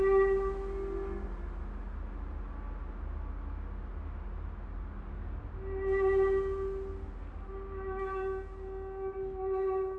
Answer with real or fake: real